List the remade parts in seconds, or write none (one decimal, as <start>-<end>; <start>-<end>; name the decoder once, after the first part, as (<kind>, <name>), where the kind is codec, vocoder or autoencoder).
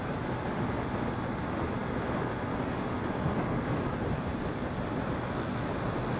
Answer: none